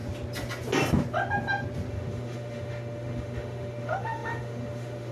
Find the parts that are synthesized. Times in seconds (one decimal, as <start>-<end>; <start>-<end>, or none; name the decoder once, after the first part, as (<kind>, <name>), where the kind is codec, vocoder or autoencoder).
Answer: 1.9-5.1 (autoencoder, DAC-VAE)